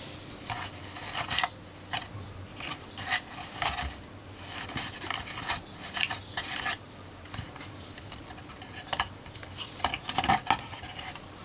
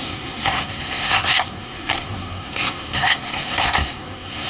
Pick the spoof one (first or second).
second